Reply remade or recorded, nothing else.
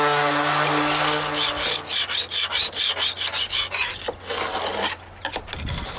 recorded